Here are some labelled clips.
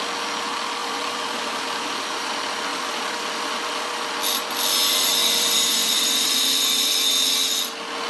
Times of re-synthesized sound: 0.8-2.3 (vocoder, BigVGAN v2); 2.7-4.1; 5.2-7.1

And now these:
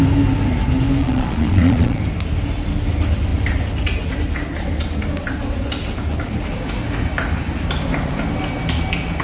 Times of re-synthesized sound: 1.0-2.0 (vocoder, Vocos)

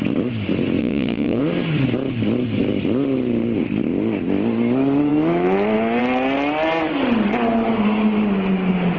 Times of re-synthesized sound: 0.8-1.4 (vocoder, Vocos)

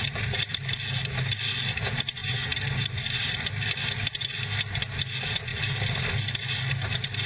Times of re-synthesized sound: 2.2-3.5 (vocoder, BigVGAN v2)

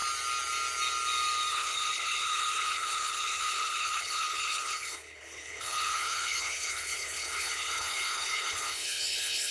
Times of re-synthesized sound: 1.5-9.5 (codec, HILCodec)

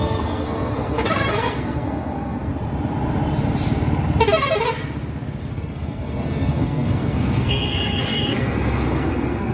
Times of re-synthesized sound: 0.0-2.5 (codec, SNAC); 5.4-9.5